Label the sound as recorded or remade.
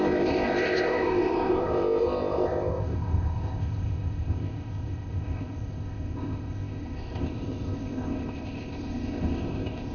remade